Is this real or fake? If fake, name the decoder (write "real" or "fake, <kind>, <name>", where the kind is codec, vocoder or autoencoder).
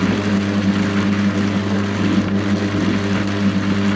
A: real